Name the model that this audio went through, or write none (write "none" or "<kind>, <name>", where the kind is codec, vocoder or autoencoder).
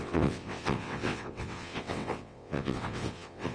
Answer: vocoder, WaveNeXt